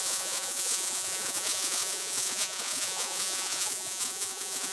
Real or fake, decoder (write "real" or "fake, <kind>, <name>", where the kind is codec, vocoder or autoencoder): fake, vocoder, Vocos